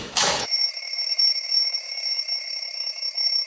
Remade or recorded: remade